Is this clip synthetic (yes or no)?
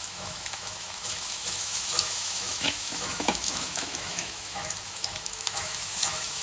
yes